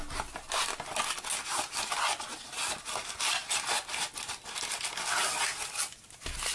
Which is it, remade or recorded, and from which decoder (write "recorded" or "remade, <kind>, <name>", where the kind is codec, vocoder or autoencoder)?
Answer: recorded